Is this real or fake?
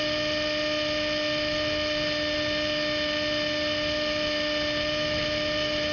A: real